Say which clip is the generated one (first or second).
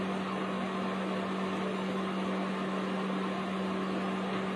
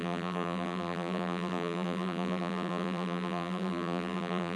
second